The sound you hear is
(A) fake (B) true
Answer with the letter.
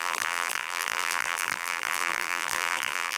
A